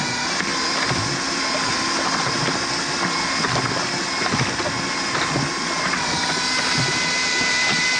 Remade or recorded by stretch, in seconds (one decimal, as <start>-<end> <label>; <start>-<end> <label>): 0.0-8.0 recorded